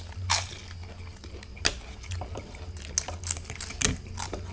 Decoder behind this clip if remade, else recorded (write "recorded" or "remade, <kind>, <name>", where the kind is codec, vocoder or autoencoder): recorded